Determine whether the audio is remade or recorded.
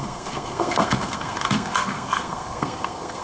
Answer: remade